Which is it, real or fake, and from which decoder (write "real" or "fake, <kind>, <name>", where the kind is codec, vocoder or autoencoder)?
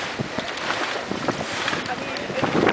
real